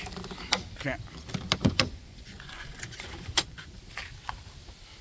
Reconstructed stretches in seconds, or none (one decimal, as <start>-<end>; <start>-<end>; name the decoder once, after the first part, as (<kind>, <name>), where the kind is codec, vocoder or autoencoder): 1.6-3.8 (vocoder, Vocos)